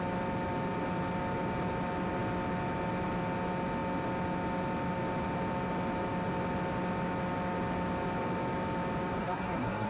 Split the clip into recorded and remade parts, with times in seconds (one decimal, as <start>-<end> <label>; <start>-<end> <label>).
0.0-9.2 recorded; 9.2-9.9 remade